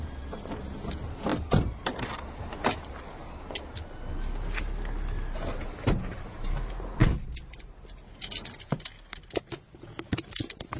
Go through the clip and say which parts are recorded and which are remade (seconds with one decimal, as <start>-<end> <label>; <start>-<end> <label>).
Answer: 0.0-1.3 recorded; 1.3-2.0 remade; 2.0-10.8 recorded